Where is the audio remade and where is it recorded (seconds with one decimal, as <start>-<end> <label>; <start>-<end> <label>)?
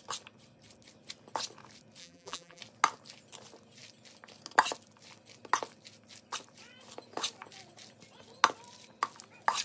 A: 0.0-2.0 recorded; 2.0-2.6 remade; 2.6-9.6 recorded